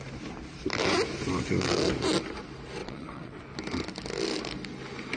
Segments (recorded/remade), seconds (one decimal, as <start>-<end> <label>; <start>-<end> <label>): 0.0-2.8 recorded; 2.8-3.4 remade; 3.4-5.2 recorded